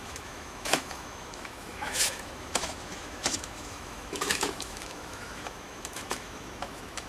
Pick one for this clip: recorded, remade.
remade